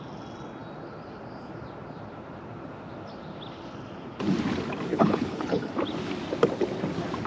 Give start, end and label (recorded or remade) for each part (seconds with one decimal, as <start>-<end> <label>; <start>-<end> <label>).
0.0-4.9 recorded; 4.9-5.7 remade; 5.7-7.3 recorded